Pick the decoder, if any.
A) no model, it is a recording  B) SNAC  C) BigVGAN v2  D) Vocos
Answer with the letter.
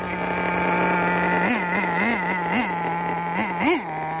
A